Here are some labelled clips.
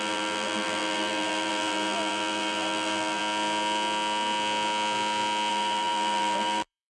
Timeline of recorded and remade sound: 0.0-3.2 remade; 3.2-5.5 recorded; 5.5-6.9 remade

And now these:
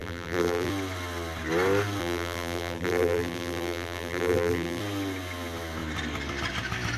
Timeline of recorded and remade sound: 0.0-0.7 remade; 0.7-2.0 recorded; 2.0-4.8 remade; 4.8-7.0 recorded

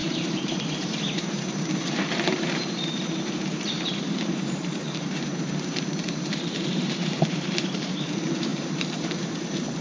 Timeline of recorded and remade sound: 0.0-9.8 remade

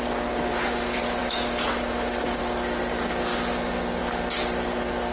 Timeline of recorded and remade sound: 0.0-5.1 recorded

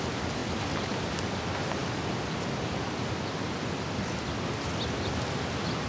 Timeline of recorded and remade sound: 0.0-0.4 recorded; 0.4-1.4 remade; 1.4-1.8 recorded; 1.8-4.4 remade; 4.4-5.9 recorded

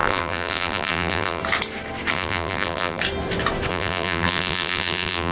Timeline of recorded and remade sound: 0.0-1.4 remade; 1.4-2.1 recorded; 2.1-3.0 remade; 3.0-3.7 recorded; 3.7-5.3 remade

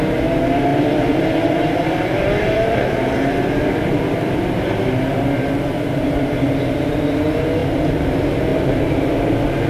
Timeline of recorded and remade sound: 0.0-0.7 recorded; 0.7-4.4 remade; 4.4-7.6 recorded; 7.6-8.1 remade; 8.1-9.7 recorded

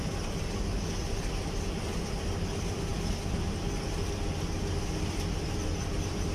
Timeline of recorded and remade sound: 0.0-6.3 recorded